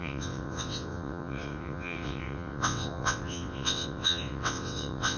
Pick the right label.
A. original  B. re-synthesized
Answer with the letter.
B